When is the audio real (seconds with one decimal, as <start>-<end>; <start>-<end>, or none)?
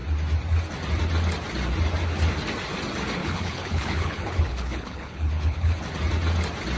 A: 0.0-3.2; 5.8-6.8